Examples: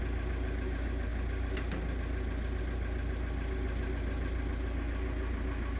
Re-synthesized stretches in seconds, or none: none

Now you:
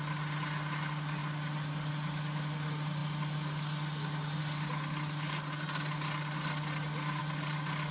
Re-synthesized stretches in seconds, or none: none

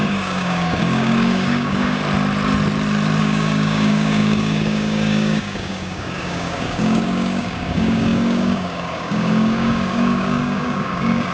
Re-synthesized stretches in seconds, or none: 0.0-2.0 (codec, DAC); 3.2-11.3

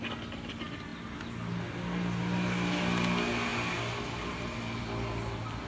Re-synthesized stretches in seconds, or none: none